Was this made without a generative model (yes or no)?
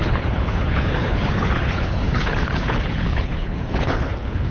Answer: no